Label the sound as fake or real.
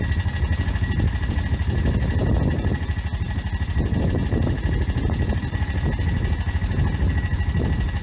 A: real